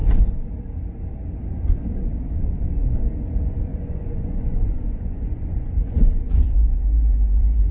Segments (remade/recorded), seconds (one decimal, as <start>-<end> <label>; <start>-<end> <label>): 0.0-3.7 recorded; 3.7-7.7 remade